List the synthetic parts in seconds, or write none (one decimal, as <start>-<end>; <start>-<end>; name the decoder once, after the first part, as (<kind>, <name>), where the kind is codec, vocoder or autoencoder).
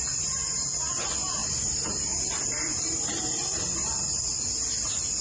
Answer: 1.4-4.1 (vocoder, BigVGAN v2)